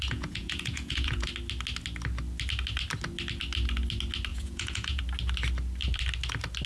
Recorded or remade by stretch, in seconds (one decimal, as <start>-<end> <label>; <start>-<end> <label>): 0.0-1.3 remade; 1.3-4.3 recorded; 4.3-5.0 remade; 5.0-6.7 recorded